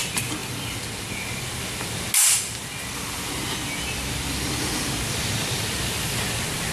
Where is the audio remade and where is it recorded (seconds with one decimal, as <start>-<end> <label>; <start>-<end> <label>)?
0.0-6.7 recorded